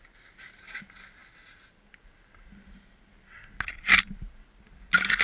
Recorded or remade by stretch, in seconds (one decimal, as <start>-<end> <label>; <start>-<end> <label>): 0.0-5.2 recorded